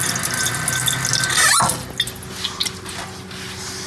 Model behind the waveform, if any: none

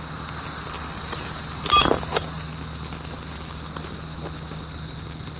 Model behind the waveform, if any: none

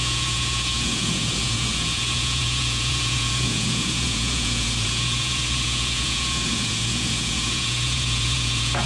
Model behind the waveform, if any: vocoder, Vocos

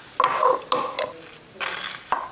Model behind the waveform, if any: none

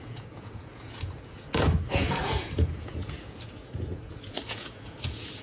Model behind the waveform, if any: vocoder, Vocos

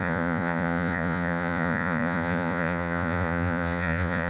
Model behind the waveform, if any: vocoder, Vocos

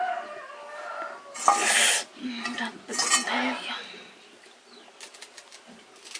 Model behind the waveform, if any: none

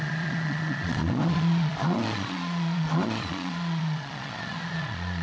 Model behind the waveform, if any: vocoder, Vocos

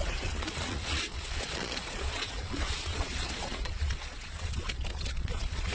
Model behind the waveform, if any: vocoder, Vocos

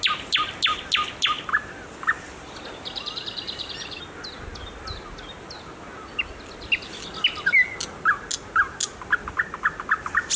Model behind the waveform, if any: none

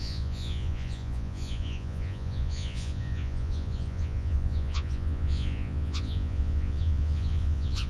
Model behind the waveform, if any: vocoder, Vocos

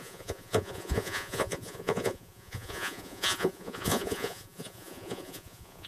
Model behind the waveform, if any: vocoder, Vocos